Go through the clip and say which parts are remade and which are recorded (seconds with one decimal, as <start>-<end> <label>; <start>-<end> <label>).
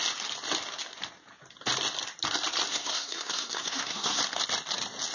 0.0-2.7 recorded; 2.7-4.2 remade; 4.2-5.1 recorded